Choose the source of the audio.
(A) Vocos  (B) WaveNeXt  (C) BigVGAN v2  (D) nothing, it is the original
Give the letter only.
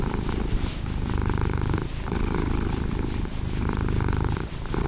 C